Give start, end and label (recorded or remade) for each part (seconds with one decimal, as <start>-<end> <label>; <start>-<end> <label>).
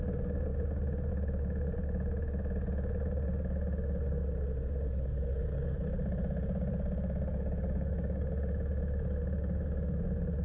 0.0-7.3 recorded; 7.3-8.3 remade; 8.3-10.4 recorded